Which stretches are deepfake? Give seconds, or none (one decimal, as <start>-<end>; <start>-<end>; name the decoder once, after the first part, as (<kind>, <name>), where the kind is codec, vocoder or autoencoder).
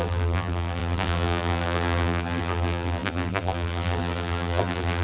0.0-5.0 (vocoder, BigVGAN v2)